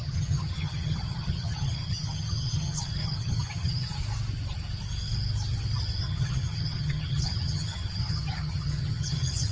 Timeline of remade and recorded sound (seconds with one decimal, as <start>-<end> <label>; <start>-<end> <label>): 0.0-4.0 remade; 4.0-6.0 recorded; 6.0-9.5 remade

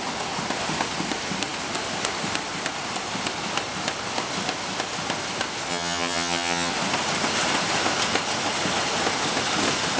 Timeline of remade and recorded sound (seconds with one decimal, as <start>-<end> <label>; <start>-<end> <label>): 0.0-5.7 recorded; 5.7-6.7 remade; 6.7-10.0 recorded

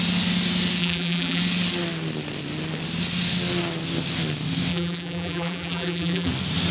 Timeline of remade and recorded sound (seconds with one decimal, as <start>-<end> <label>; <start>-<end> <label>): 0.0-0.8 recorded; 0.8-1.4 remade; 1.4-4.7 recorded; 4.7-6.3 remade; 6.3-6.7 recorded

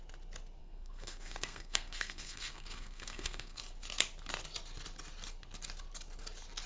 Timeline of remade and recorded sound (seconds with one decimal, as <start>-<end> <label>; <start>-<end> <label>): 0.0-0.6 recorded; 0.6-3.6 remade; 3.6-6.7 recorded

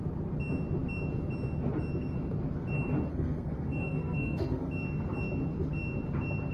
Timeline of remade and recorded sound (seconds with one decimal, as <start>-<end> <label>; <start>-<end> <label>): 0.0-3.1 recorded; 3.1-4.7 remade; 4.7-6.5 recorded

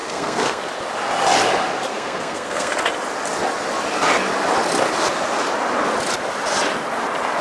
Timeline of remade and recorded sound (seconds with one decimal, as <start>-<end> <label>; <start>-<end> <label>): 0.0-0.7 remade; 0.7-1.9 recorded; 1.9-2.7 remade; 2.7-7.4 recorded

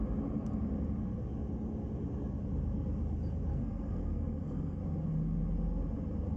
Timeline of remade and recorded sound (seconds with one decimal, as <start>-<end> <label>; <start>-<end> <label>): 0.0-3.5 recorded; 3.5-4.8 remade; 4.8-6.4 recorded